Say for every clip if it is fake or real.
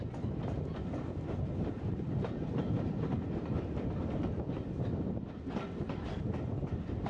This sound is fake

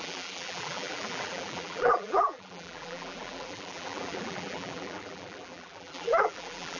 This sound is fake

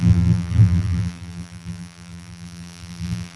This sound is fake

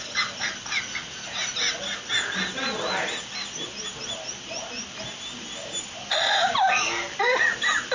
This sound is real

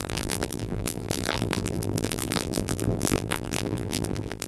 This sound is fake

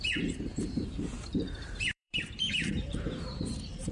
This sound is fake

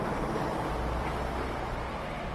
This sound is fake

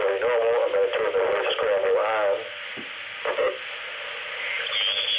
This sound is real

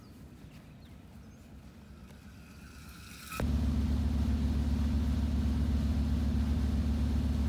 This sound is real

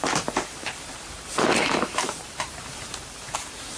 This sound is fake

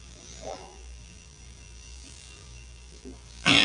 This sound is fake